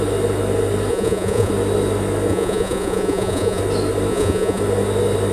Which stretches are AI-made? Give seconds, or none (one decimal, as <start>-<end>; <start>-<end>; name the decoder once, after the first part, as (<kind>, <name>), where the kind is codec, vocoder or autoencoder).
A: 0.9-1.5 (vocoder, Vocos); 2.3-3.6; 4.1-4.6